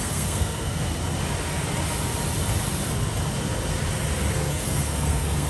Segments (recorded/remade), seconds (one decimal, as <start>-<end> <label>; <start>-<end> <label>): 0.0-1.0 remade; 1.0-4.3 recorded; 4.3-5.5 remade